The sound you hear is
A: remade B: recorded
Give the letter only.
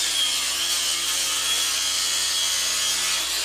A